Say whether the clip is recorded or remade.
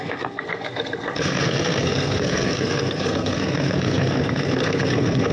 remade